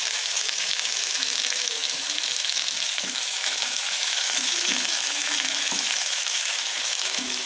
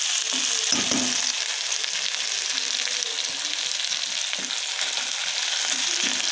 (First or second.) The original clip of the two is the second